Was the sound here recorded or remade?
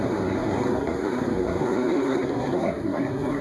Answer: remade